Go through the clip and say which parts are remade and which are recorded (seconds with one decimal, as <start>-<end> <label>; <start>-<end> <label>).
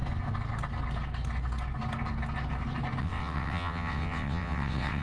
0.0-3.0 recorded; 3.0-5.0 remade